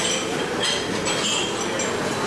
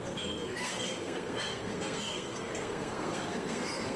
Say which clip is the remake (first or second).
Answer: second